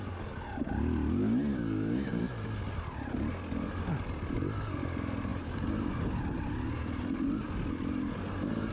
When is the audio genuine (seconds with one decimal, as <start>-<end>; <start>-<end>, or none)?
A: 0.0-1.5; 2.2-8.7